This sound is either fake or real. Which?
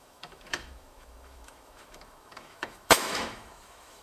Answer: fake